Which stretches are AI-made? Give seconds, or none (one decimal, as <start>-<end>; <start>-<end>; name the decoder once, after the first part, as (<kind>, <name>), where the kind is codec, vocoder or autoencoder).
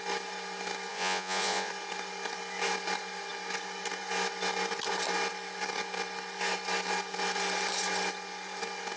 0.9-1.7 (vocoder, Vocos)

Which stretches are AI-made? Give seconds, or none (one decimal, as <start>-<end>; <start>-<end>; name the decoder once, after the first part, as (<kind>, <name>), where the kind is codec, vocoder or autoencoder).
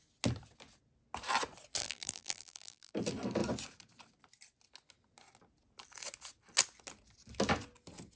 1.8-2.9 (vocoder, BigVGAN v2)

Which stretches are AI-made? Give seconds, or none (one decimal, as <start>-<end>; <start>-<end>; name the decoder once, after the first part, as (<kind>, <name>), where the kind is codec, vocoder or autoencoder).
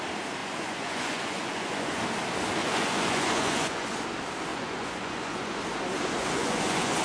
0.4-2.0 (vocoder, Vocos); 2.6-4.0; 4.5-5.6; 6.2-7.0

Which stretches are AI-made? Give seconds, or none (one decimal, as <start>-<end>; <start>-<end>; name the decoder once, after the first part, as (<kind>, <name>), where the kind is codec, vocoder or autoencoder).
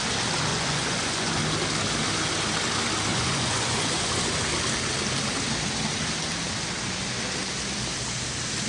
0.5-1.4 (vocoder, Vocos); 3.1-4.1